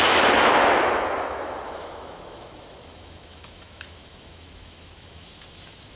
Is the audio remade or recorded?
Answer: remade